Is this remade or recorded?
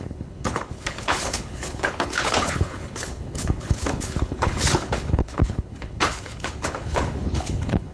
remade